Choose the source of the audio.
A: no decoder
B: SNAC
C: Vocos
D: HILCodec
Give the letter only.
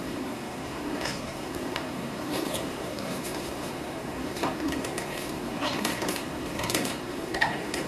B